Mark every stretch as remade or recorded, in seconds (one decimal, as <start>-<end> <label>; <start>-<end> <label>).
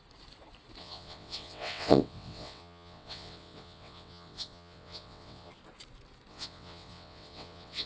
0.0-0.8 recorded; 0.8-5.5 remade; 5.5-6.3 recorded; 6.3-7.9 remade